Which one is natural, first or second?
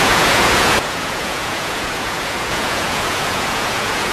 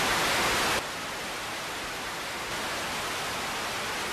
second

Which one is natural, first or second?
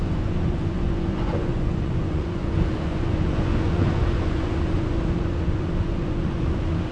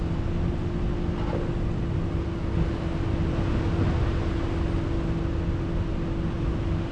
second